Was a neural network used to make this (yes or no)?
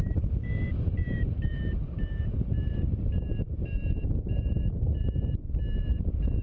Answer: yes